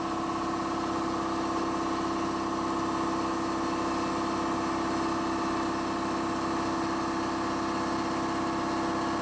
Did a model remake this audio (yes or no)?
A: no